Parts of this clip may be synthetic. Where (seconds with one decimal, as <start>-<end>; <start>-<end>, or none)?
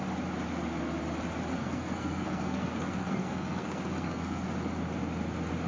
1.5-4.5